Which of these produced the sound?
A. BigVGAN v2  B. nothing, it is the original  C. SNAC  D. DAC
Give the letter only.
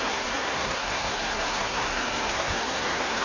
C